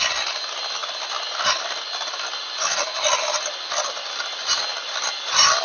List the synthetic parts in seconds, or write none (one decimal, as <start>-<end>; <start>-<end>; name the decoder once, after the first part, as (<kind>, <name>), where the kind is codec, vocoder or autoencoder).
none